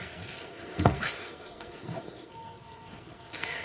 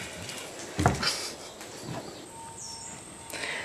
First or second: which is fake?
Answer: first